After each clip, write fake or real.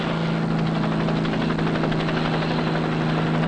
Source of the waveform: real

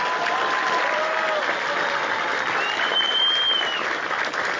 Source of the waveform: real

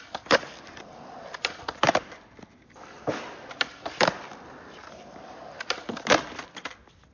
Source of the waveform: real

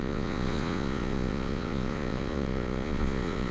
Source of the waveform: fake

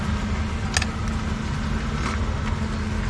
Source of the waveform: real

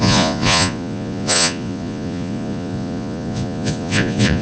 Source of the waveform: fake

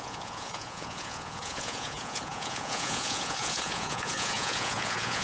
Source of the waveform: fake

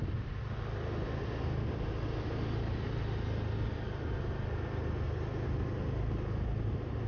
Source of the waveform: real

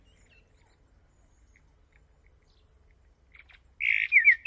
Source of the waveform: real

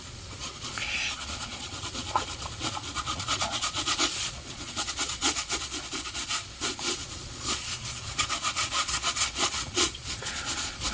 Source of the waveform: fake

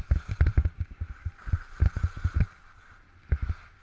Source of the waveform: real